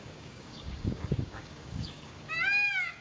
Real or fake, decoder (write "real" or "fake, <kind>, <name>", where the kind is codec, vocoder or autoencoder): fake, codec, DAC